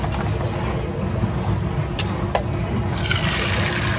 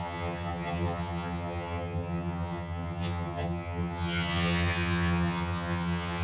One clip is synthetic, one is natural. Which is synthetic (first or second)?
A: second